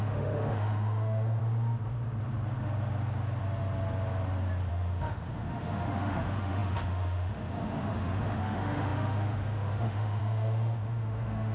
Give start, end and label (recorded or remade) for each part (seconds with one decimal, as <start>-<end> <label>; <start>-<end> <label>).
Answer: 0.0-1.4 remade; 1.4-4.7 recorded; 4.7-11.5 remade